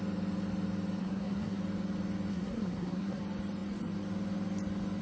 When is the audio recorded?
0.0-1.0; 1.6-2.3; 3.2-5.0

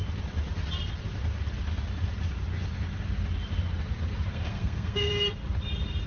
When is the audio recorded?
0.0-4.3; 5.1-6.1

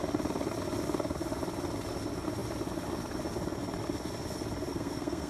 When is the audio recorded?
0.0-4.7

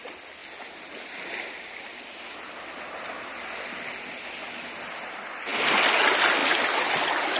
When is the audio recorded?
0.0-7.4

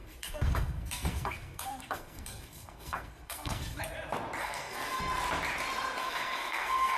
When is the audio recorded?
3.8-4.4; 5.0-6.0